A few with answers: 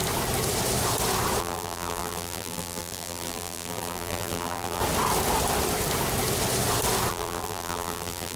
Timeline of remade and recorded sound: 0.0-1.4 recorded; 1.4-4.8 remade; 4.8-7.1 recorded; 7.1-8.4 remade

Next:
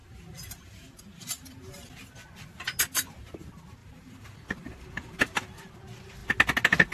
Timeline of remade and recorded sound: 0.0-0.6 remade; 0.6-3.8 recorded; 3.8-5.7 remade; 5.7-6.9 recorded

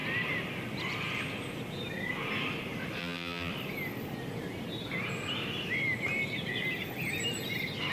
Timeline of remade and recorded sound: 0.0-3.0 recorded; 3.0-3.5 remade; 3.5-7.9 recorded

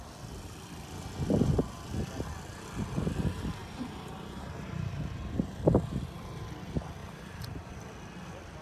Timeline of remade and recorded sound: 0.0-3.6 recorded; 3.6-5.1 remade; 5.1-7.0 recorded; 7.0-7.8 remade; 7.8-8.6 recorded

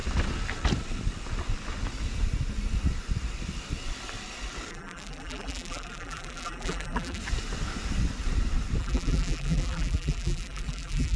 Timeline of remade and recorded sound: 0.0-4.7 recorded; 4.7-7.2 remade; 7.2-8.8 recorded; 8.8-11.2 remade

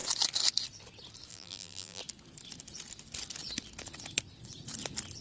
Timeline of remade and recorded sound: 0.0-1.3 recorded; 1.3-2.0 remade; 2.0-5.2 recorded

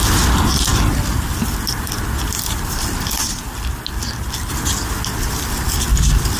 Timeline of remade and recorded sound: 0.0-6.4 recorded

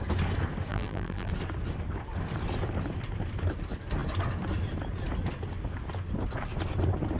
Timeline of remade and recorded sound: 0.0-0.7 recorded; 0.7-1.3 remade; 1.3-7.2 recorded